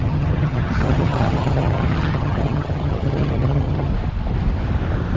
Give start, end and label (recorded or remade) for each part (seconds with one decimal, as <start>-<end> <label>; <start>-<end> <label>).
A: 0.0-3.9 remade; 3.9-5.2 recorded